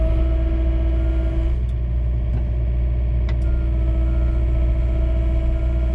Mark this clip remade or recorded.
recorded